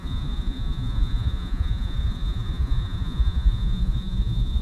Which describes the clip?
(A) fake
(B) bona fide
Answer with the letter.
A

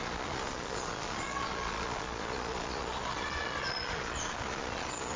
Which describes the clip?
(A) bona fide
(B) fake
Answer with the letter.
B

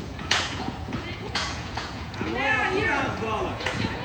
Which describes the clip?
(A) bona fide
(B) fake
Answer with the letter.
B